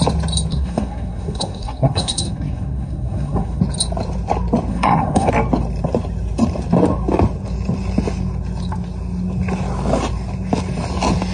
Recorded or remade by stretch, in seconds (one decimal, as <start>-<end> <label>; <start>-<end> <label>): 0.0-0.5 recorded; 0.5-3.6 remade; 3.6-4.7 recorded; 4.7-5.3 remade; 5.3-11.3 recorded